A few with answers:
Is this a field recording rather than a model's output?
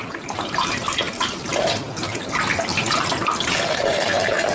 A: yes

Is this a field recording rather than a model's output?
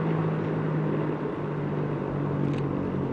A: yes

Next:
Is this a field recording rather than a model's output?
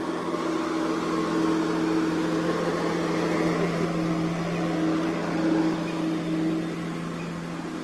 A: yes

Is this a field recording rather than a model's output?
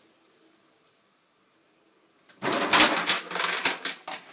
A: yes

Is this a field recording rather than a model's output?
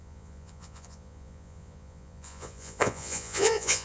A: no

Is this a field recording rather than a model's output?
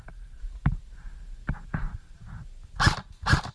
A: yes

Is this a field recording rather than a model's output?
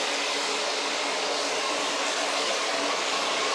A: no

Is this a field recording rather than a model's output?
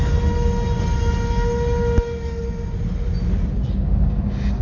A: yes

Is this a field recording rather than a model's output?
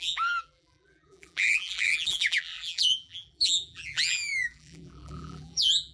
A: no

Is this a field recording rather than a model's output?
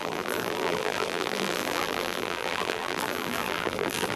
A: no